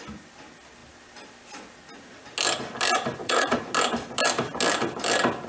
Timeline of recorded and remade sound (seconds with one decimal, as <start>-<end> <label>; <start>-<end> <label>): 0.0-3.2 recorded; 3.2-3.7 remade; 3.7-5.5 recorded